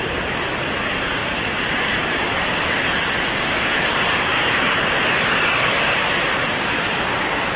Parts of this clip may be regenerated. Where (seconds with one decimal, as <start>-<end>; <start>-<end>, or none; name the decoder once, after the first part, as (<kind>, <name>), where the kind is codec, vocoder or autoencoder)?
1.2-2.6 (vocoder, BigVGAN v2); 4.3-7.6